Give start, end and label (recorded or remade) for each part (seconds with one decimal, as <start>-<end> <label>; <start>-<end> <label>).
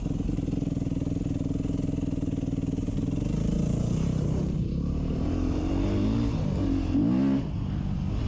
0.0-3.5 recorded; 3.5-5.7 remade; 5.7-8.3 recorded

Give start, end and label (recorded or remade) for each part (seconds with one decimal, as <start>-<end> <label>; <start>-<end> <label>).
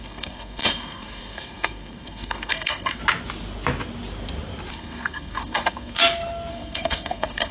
0.0-3.0 remade; 3.0-4.7 recorded; 4.7-6.0 remade; 6.0-6.5 recorded; 6.5-7.5 remade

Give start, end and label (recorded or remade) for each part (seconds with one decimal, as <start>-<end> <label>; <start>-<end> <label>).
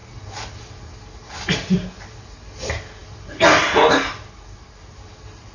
0.0-5.5 recorded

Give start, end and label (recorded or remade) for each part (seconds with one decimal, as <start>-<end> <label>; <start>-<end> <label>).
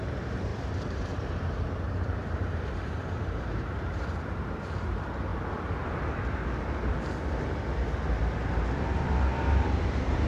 0.0-5.3 remade; 5.3-8.5 recorded; 8.5-10.3 remade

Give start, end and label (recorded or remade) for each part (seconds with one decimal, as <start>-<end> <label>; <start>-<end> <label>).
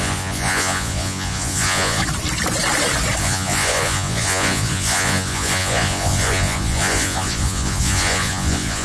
0.0-2.0 remade; 2.0-3.2 recorded; 3.2-8.8 remade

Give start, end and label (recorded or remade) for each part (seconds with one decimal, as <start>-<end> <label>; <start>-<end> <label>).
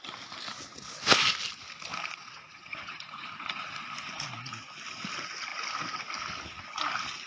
0.0-1.9 recorded; 1.9-3.8 remade; 3.8-7.3 recorded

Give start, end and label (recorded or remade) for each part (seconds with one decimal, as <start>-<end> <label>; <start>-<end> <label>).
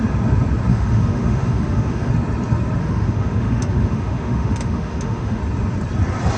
0.0-0.7 recorded; 0.7-2.1 remade; 2.1-2.8 recorded; 2.8-5.4 remade; 5.4-6.4 recorded